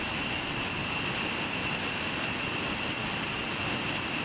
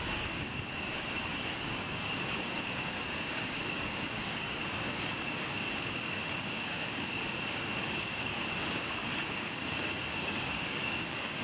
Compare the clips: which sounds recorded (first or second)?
first